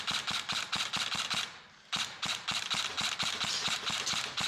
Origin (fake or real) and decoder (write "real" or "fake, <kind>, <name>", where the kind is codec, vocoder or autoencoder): real